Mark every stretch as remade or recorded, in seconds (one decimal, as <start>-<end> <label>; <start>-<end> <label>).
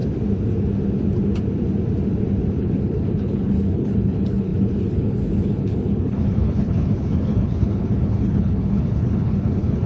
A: 0.0-2.6 recorded; 2.6-9.9 remade